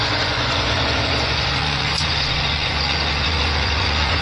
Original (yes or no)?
no